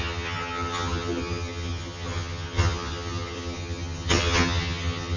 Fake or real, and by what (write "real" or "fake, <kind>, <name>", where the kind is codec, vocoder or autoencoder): fake, vocoder, HiFi-GAN